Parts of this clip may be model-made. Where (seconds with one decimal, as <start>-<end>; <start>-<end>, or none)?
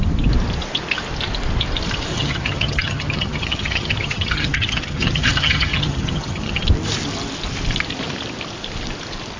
2.1-6.6